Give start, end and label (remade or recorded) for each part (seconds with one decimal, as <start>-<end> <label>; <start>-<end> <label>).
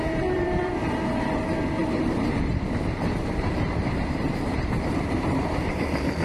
0.0-6.2 remade